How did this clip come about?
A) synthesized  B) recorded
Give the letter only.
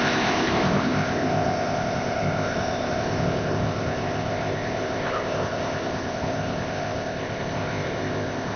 A